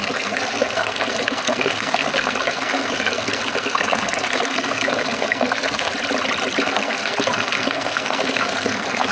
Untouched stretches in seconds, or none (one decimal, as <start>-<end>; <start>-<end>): 5.9-6.6

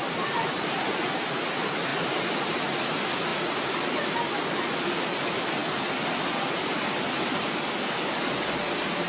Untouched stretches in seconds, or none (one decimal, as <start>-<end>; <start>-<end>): 0.0-9.1

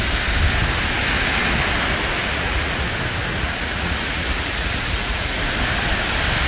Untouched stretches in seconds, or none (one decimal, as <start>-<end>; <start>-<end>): 0.0-2.3; 2.9-3.3; 5.4-6.5

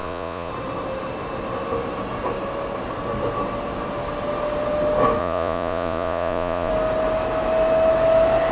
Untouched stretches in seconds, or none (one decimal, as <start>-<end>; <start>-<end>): 0.5-5.2; 6.7-8.5

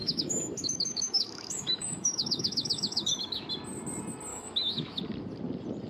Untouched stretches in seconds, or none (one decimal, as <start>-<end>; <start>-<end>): 3.5-4.3; 5.0-5.9